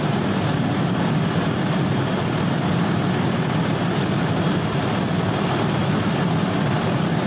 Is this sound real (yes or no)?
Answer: no